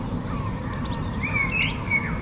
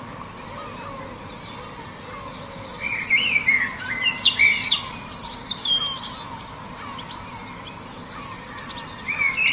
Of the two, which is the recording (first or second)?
second